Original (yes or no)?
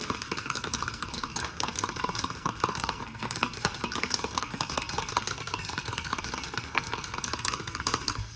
no